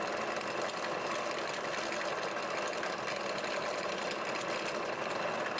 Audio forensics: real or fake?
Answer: real